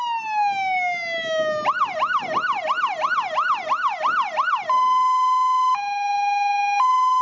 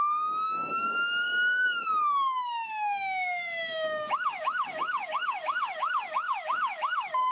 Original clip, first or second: first